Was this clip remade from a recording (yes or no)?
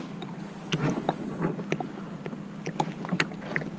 no